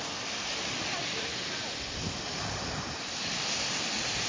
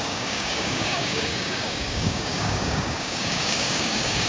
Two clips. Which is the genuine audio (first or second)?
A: first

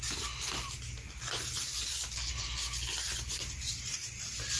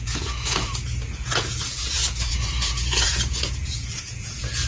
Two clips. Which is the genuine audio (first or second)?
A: first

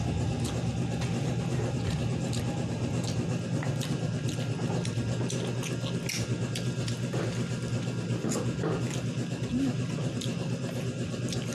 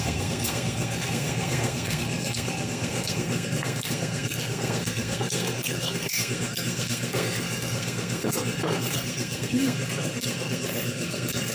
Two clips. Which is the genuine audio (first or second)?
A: first